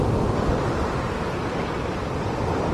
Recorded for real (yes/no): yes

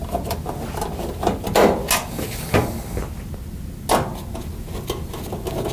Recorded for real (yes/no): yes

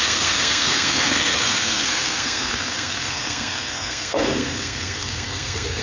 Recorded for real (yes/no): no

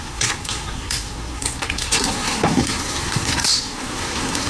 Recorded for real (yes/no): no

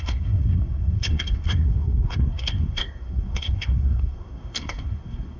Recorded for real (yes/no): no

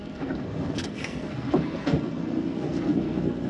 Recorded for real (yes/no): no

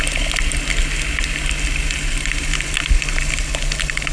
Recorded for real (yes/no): yes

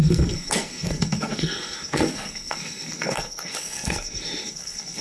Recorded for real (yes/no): no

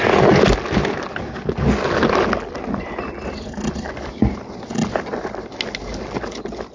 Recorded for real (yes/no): yes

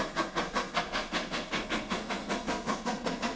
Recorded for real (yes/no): no